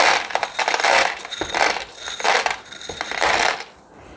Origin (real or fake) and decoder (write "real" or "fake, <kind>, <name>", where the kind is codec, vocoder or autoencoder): real